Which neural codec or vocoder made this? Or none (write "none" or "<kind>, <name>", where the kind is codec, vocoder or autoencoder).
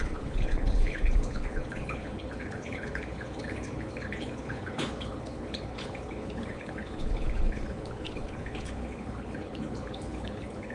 codec, HILCodec